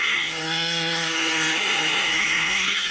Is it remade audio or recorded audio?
remade